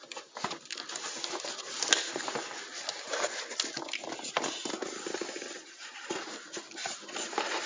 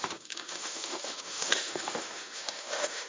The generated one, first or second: second